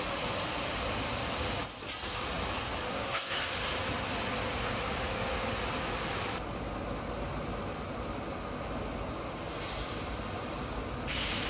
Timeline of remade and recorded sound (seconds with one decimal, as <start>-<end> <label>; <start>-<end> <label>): 0.0-2.9 recorded; 2.9-3.4 remade; 3.4-11.5 recorded